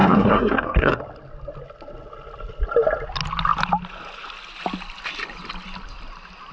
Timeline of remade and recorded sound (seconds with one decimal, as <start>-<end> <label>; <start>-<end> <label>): 0.0-1.0 remade; 1.0-6.5 recorded

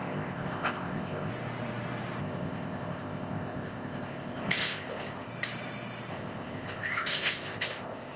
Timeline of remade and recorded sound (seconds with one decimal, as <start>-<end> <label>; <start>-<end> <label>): 0.0-1.3 remade; 1.3-2.2 recorded; 2.2-5.3 remade; 5.3-6.1 recorded; 6.1-8.2 remade

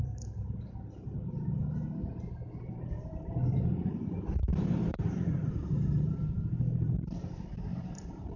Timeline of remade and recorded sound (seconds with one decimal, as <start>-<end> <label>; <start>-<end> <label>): 0.0-1.6 remade; 1.6-2.6 recorded; 2.6-8.4 remade

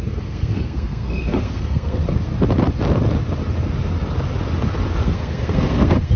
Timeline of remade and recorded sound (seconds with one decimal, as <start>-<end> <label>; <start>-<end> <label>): 0.0-2.3 remade; 2.3-5.0 recorded; 5.0-6.2 remade

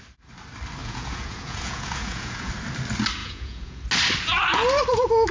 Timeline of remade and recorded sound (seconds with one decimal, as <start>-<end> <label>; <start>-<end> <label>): 0.0-0.8 recorded; 0.8-2.5 remade; 2.5-3.2 recorded; 3.2-3.8 remade; 3.8-5.3 recorded

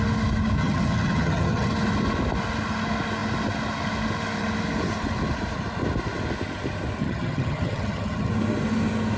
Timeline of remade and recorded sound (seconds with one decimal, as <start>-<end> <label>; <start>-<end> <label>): 0.0-0.6 recorded; 0.6-1.7 remade; 1.7-7.0 recorded; 7.0-8.3 remade; 8.3-9.2 recorded